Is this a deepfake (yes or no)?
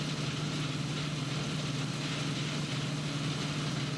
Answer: no